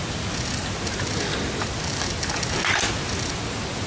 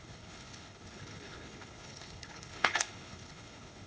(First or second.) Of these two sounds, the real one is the first